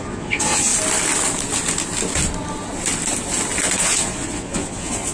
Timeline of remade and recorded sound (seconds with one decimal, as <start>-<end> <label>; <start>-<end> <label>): 0.0-0.7 remade; 0.7-3.8 recorded; 3.8-5.1 remade